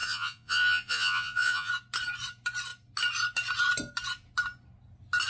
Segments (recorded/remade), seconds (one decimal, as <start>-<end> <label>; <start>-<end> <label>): 0.0-1.7 remade; 1.7-5.3 recorded